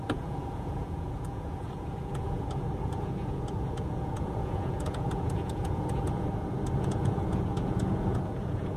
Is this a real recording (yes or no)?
no